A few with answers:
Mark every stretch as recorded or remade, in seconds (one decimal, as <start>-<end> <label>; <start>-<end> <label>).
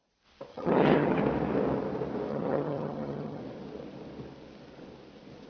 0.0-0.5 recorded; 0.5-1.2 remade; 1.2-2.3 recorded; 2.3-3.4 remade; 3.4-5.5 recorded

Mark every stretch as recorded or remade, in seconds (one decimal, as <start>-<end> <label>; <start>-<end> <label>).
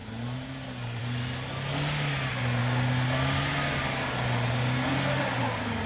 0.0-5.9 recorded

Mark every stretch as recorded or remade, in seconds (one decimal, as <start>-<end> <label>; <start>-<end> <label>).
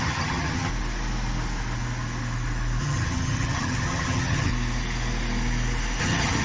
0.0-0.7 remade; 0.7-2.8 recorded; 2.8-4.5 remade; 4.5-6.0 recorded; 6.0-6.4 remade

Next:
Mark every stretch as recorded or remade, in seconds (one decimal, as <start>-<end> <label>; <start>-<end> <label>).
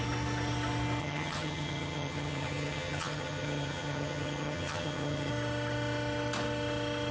0.0-1.0 recorded; 1.0-5.3 remade; 5.3-7.1 recorded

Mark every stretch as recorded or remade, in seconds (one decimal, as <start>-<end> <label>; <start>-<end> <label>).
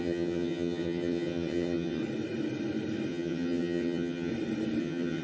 0.0-2.0 remade; 2.0-3.1 recorded; 3.1-4.3 remade; 4.3-4.8 recorded; 4.8-5.2 remade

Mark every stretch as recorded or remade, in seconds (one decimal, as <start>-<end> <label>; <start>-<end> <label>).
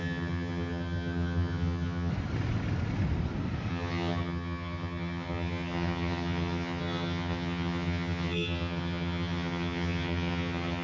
0.0-2.1 remade; 2.1-3.7 recorded; 3.7-10.8 remade